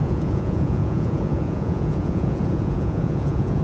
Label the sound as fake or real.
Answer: fake